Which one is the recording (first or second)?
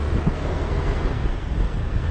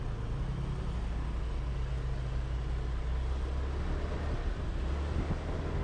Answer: second